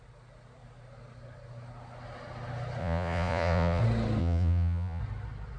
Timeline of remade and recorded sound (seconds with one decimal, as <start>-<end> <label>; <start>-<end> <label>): 0.0-2.8 recorded; 2.8-3.8 remade; 3.8-4.2 recorded; 4.2-5.0 remade; 5.0-5.6 recorded